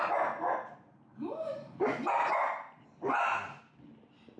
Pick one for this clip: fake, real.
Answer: real